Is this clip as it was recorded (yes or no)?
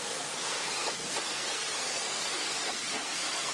no